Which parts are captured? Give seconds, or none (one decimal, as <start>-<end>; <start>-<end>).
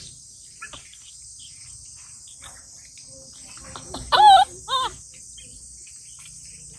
1.8-2.6; 3.0-3.7; 4.2-5.2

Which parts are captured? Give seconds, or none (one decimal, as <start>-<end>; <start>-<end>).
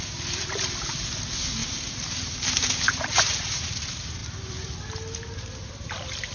0.0-1.6; 3.8-6.3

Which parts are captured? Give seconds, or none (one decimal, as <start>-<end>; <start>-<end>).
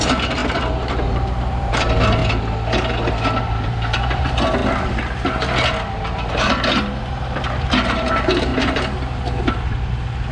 2.2-3.4; 4.6-6.3; 8.5-10.3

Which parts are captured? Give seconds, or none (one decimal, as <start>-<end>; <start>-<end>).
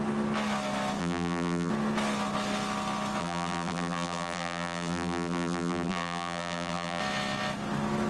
0.0-1.0; 1.7-3.2; 7.0-8.1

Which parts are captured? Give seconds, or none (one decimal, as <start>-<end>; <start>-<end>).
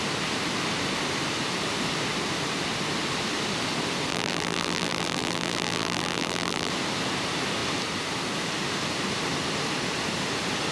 0.0-4.1; 6.7-10.7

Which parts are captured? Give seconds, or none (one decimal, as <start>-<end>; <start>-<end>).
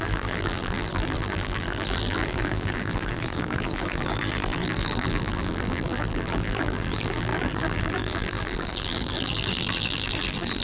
none